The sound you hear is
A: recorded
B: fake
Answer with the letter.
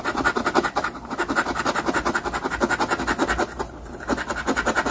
A